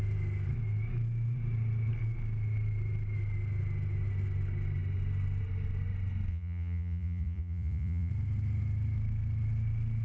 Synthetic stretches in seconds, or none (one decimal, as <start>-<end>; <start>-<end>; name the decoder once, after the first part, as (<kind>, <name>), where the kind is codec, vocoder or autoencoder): 6.3-8.1 (vocoder, Vocos)